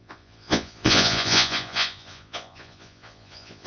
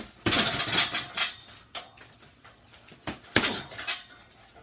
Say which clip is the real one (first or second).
second